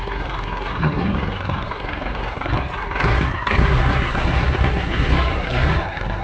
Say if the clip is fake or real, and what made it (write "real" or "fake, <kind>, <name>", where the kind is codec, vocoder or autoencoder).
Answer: fake, codec, SNAC